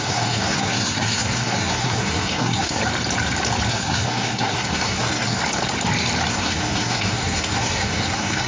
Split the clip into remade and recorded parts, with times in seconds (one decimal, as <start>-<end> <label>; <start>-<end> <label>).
0.0-2.8 remade; 2.8-3.7 recorded; 3.7-5.4 remade; 5.4-6.3 recorded; 6.3-8.5 remade

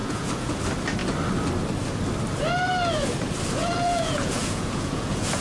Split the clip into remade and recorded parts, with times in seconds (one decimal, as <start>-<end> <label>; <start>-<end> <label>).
0.0-0.6 remade; 0.6-3.6 recorded; 3.6-5.4 remade

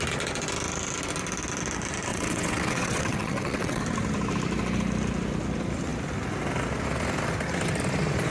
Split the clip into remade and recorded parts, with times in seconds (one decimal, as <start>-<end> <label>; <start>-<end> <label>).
0.0-2.1 recorded; 2.1-3.8 remade; 3.8-8.3 recorded

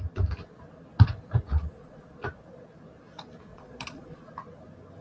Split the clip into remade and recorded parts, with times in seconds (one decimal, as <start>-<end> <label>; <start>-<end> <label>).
0.0-1.5 recorded; 1.5-2.1 remade; 2.1-3.5 recorded; 3.5-4.3 remade; 4.3-5.0 recorded

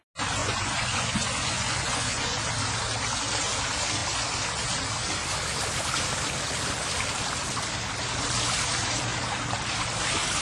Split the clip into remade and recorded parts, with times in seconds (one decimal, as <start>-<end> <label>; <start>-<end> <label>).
0.0-0.4 recorded; 0.4-2.4 remade; 2.4-10.4 recorded

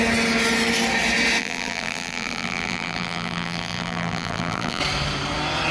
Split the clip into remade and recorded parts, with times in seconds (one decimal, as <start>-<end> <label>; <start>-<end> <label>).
0.0-1.4 recorded; 1.4-4.8 remade; 4.8-5.7 recorded

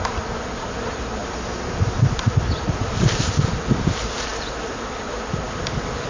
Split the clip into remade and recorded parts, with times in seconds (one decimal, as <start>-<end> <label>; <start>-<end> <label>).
0.0-6.1 recorded

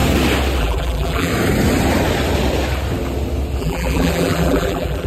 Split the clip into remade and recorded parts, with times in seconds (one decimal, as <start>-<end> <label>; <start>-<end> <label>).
0.0-0.6 recorded; 0.6-1.3 remade; 1.3-3.6 recorded; 3.6-5.1 remade